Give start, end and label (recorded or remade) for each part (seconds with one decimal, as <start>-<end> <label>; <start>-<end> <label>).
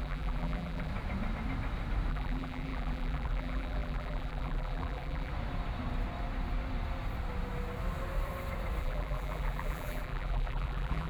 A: 0.0-0.9 remade; 0.9-2.1 recorded; 2.1-5.3 remade; 5.3-8.8 recorded; 8.8-11.1 remade